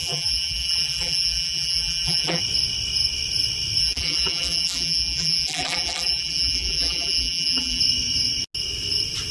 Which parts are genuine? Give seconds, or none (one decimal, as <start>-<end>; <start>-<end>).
2.4-3.8; 7.8-9.3